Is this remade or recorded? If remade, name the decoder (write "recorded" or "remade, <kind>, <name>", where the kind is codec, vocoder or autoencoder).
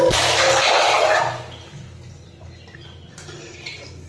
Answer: recorded